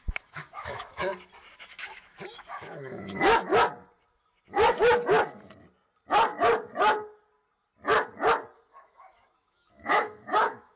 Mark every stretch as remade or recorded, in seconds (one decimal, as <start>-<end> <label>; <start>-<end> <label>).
0.0-1.1 remade; 1.1-1.6 recorded; 1.6-3.5 remade; 3.5-8.7 recorded; 8.7-10.8 remade